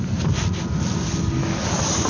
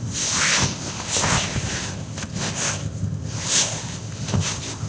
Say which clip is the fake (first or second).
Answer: second